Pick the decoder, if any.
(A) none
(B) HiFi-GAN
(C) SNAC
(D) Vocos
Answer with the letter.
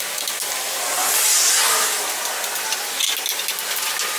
A